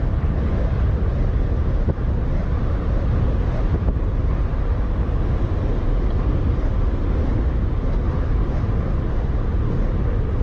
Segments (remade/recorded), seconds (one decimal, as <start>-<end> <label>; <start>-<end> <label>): 0.0-2.4 recorded; 2.4-3.8 remade; 3.8-10.4 recorded